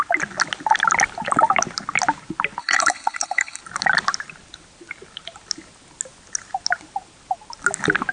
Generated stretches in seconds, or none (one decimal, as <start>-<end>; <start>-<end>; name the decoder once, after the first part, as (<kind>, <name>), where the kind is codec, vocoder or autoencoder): 2.6-3.6 (codec, HILCodec)